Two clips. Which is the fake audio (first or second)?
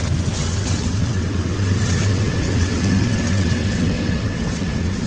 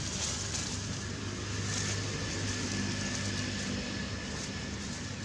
first